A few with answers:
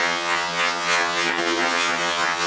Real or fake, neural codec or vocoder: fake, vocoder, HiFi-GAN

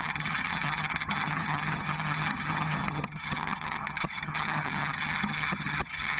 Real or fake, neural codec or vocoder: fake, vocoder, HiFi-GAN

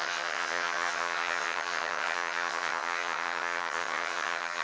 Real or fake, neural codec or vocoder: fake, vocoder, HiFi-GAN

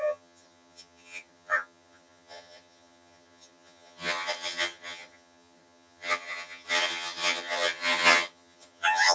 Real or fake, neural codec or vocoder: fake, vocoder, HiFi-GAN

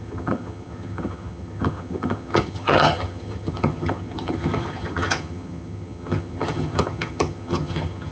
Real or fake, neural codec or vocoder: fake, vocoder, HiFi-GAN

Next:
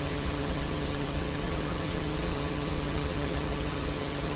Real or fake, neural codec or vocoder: fake, vocoder, HiFi-GAN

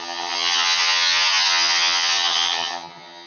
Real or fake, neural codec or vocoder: fake, vocoder, HiFi-GAN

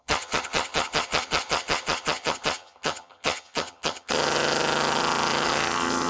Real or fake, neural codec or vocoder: fake, vocoder, HiFi-GAN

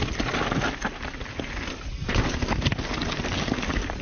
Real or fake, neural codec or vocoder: real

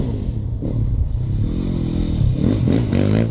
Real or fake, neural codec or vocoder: real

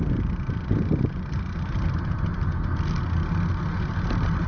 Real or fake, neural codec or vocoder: real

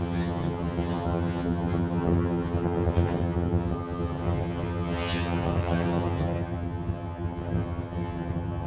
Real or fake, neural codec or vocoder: fake, vocoder, HiFi-GAN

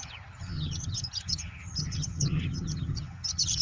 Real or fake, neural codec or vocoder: fake, vocoder, HiFi-GAN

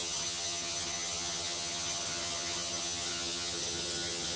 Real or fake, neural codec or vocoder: fake, vocoder, HiFi-GAN